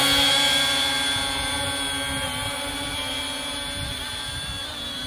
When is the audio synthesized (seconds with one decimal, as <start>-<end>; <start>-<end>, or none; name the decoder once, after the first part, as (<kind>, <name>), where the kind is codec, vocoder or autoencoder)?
none